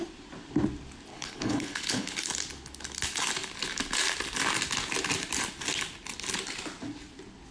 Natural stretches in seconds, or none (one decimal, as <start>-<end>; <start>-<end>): 0.0-1.1; 2.2-7.5